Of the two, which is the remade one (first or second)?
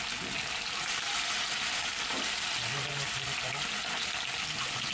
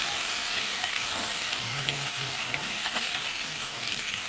second